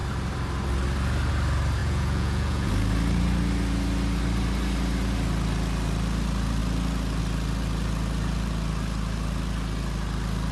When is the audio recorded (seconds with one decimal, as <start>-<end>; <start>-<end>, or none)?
0.0-1.8; 2.7-10.5

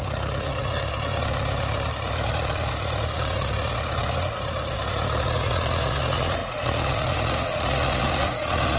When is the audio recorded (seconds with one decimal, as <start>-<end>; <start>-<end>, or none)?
none

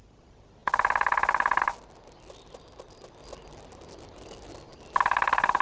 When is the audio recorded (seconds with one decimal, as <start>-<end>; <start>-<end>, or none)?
0.0-5.6

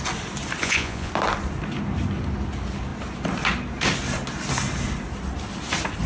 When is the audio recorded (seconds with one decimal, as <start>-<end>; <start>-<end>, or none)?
0.0-0.6; 1.1-6.1